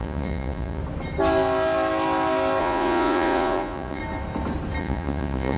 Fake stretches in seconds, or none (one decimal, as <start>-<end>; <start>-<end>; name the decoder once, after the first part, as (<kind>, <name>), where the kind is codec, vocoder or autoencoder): 0.0-0.8 (vocoder, Vocos); 2.6-4.0; 4.8-5.6